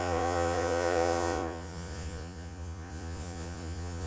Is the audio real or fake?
fake